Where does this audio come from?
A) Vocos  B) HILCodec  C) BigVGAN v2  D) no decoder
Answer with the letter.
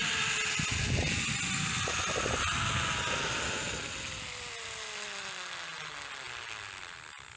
D